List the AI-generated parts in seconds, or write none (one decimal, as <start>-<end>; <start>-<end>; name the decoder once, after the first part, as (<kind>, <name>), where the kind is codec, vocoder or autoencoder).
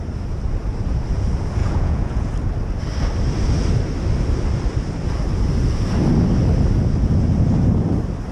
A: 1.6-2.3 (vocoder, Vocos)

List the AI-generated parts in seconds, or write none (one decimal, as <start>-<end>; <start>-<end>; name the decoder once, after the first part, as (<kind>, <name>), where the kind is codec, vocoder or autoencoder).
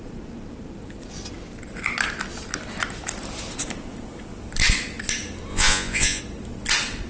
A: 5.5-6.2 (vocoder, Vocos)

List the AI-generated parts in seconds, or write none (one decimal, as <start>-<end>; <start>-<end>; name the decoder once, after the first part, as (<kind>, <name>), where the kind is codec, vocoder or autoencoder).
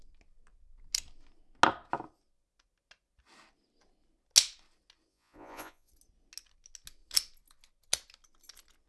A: 5.1-5.9 (vocoder, Vocos)